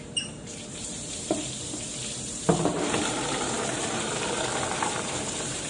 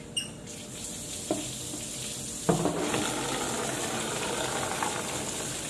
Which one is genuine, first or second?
second